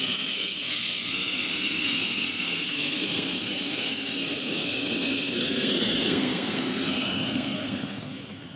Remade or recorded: remade